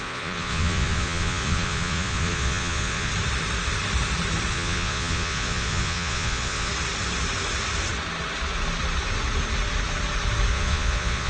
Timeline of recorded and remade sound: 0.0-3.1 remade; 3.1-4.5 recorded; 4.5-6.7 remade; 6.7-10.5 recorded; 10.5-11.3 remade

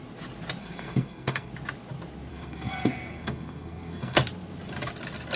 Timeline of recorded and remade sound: 0.0-0.6 recorded; 0.6-1.5 remade; 1.5-2.3 recorded; 2.3-4.2 remade; 4.2-5.4 recorded